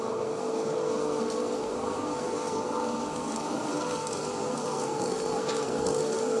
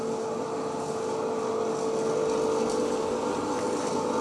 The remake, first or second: first